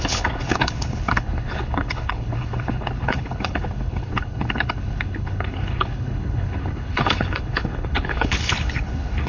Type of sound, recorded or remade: remade